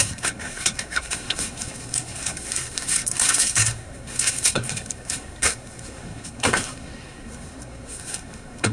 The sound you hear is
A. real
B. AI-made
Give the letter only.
B